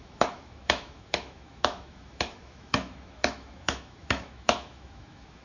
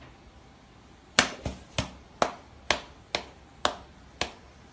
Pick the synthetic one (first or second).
first